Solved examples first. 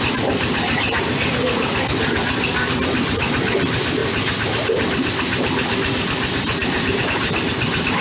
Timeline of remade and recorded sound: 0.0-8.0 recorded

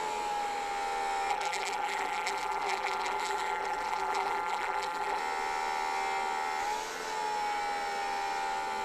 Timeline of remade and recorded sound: 0.0-1.3 recorded; 1.3-5.2 remade; 5.2-8.8 recorded

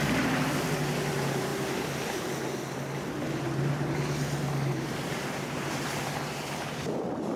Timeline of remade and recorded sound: 0.0-7.4 recorded